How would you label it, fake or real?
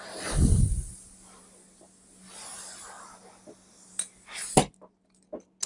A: real